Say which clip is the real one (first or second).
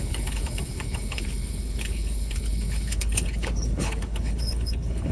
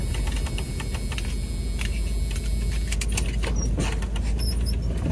second